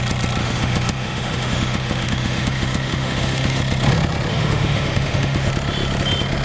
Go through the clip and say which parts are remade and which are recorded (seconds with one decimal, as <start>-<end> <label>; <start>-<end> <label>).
0.0-0.4 recorded; 0.4-3.6 remade; 3.6-4.3 recorded; 4.3-5.5 remade; 5.5-6.4 recorded